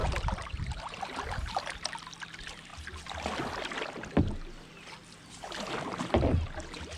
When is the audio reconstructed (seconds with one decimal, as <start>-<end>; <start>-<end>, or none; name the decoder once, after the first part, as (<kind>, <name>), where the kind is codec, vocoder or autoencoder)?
none